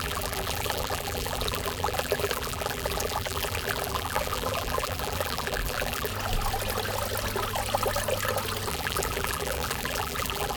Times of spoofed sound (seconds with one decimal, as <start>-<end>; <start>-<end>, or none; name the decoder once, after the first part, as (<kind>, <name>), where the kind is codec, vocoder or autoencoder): 0.0-6.1 (vocoder, BigVGAN v2); 8.7-10.6